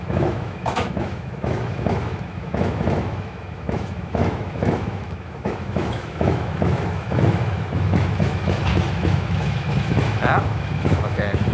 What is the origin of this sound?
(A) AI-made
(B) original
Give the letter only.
A